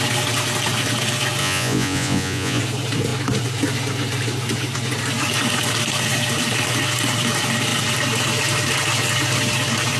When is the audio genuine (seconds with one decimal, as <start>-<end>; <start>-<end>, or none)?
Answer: 0.0-1.4; 2.6-10.0